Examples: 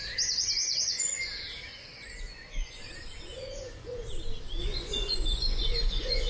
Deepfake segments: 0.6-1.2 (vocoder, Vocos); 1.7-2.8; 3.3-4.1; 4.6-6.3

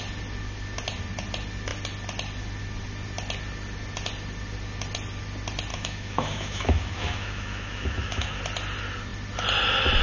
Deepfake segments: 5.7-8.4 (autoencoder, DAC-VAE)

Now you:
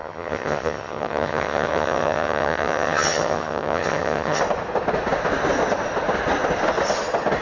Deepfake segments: 0.0-4.4 (vocoder, HiFi-GAN)